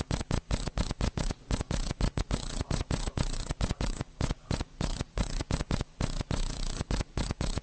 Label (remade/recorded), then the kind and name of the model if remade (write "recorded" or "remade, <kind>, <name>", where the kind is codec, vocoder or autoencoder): remade, vocoder, Vocos